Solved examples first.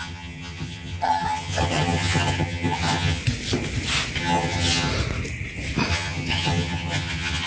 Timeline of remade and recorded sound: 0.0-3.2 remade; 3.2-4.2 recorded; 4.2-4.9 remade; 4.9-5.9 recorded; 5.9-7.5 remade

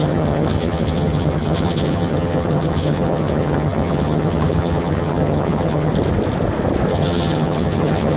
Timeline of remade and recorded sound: 0.0-5.9 remade; 5.9-6.9 recorded; 6.9-8.2 remade

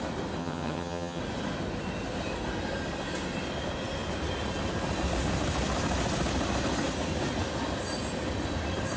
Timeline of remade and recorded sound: 0.0-0.4 recorded; 0.4-1.2 remade; 1.2-9.0 recorded

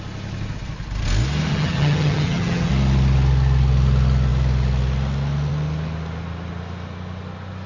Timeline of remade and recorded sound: 0.0-1.5 recorded; 1.5-2.7 remade; 2.7-7.7 recorded